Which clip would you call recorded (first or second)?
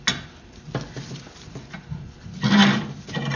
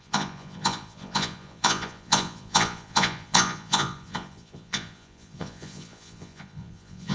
first